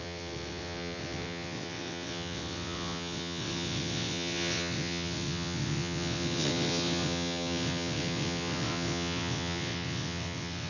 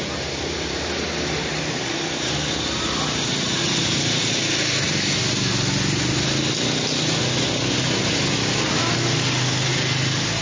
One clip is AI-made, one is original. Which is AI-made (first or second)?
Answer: first